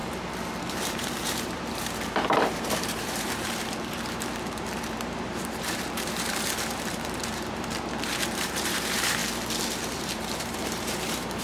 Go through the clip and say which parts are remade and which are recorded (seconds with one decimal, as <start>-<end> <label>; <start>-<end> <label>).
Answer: 0.0-0.6 recorded; 0.6-9.2 remade; 9.2-9.8 recorded; 9.8-11.4 remade